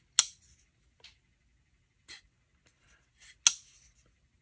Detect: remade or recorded recorded